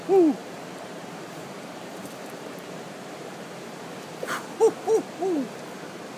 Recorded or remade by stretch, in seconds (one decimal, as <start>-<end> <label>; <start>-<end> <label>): 0.0-0.4 recorded; 0.4-3.8 remade; 3.8-6.2 recorded